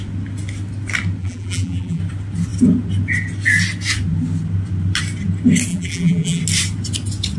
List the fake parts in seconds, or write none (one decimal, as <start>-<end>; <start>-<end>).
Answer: 1.2-2.0; 5.7-6.4